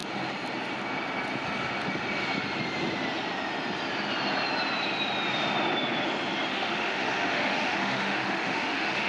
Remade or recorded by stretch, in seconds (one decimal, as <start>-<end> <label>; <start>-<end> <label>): 0.0-6.5 recorded; 6.5-9.1 remade